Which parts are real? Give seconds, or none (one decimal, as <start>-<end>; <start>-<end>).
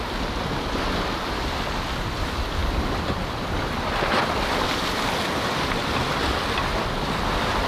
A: 0.0-7.7